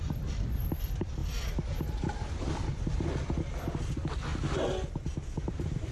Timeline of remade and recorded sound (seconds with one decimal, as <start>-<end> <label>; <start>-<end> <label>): 0.0-1.2 remade; 1.2-3.8 recorded; 3.8-4.3 remade; 4.3-4.9 recorded; 4.9-5.9 remade